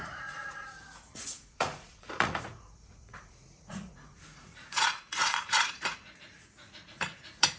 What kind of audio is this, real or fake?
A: fake